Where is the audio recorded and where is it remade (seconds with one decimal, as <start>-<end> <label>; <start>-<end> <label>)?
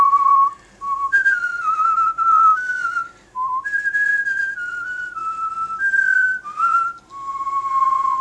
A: 0.0-2.5 remade; 2.5-4.7 recorded; 4.7-8.2 remade